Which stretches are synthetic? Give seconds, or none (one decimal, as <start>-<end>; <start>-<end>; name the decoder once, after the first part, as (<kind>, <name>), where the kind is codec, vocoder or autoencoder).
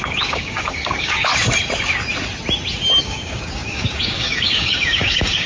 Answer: 0.0-1.3 (codec, DAC); 3.0-5.5